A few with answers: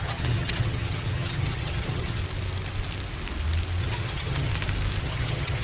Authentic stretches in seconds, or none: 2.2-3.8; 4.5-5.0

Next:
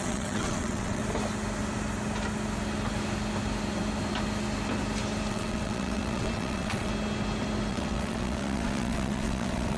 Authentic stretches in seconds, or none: 1.0-5.3; 6.9-7.7

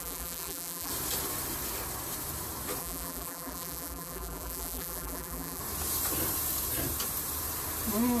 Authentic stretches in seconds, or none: 0.9-2.8; 5.6-8.2

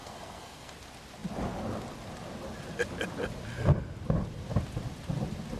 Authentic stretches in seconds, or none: 0.7-5.6

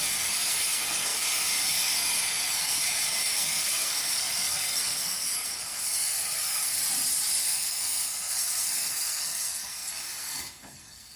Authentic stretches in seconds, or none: 6.8-7.4

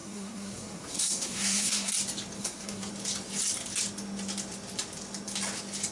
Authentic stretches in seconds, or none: 1.9-2.4; 2.9-5.9

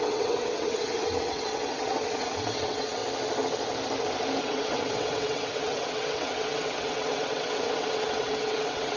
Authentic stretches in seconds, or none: 3.0-4.4